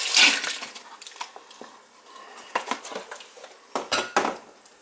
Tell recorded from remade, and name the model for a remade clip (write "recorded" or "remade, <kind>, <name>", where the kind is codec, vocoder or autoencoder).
recorded